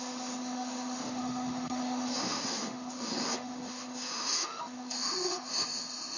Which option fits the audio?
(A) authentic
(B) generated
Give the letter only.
B